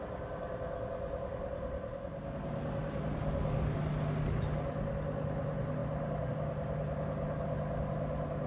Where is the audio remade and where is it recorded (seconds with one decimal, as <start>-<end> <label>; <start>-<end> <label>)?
0.0-8.5 recorded